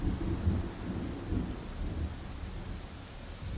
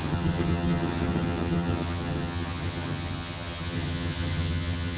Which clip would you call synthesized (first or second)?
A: second